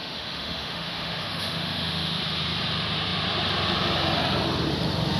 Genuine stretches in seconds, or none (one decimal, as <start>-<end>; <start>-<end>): 2.2-5.2